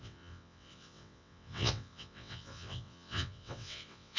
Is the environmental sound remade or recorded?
remade